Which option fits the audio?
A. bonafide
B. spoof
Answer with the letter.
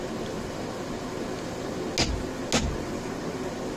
A